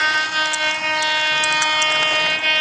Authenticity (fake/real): real